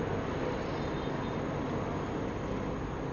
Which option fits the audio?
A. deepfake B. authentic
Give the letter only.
B